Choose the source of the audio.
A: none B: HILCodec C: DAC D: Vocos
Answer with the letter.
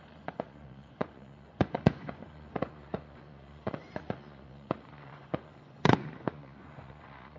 D